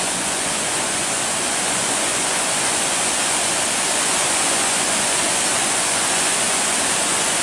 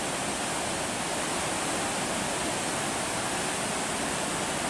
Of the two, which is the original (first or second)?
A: second